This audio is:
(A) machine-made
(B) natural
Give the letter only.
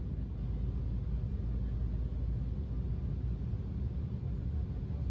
B